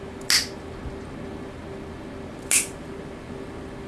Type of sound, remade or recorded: recorded